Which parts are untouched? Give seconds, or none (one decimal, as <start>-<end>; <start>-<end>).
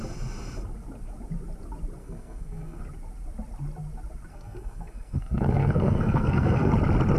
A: 0.0-2.0; 2.8-4.3; 6.7-7.2